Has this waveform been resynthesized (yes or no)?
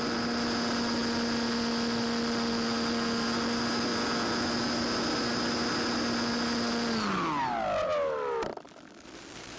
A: no